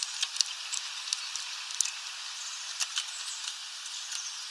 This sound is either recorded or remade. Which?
recorded